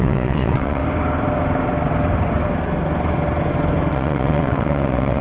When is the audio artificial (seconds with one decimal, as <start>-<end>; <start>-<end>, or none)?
0.0-0.8; 3.9-5.2